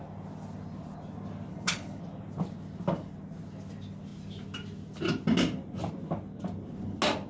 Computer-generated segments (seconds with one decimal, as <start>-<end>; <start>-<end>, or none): 1.5-2.0

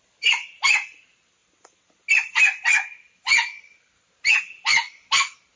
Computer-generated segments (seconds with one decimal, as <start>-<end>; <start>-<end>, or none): none

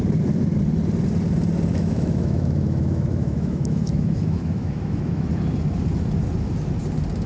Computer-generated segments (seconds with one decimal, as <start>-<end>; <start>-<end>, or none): 1.7-5.3

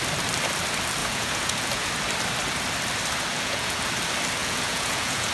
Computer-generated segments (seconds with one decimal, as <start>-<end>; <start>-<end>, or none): 1.0-1.9; 3.3-3.9; 4.4-5.3

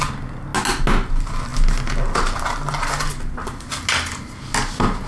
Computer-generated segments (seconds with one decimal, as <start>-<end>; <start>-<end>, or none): none